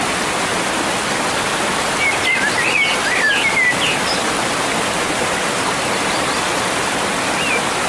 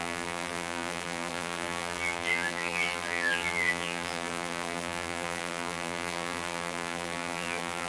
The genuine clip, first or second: first